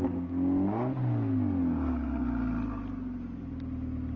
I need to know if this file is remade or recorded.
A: recorded